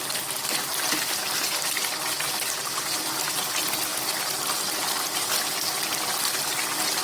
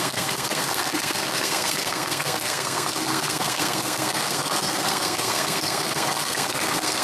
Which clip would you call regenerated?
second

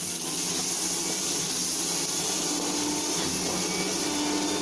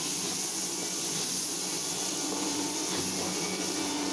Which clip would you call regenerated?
second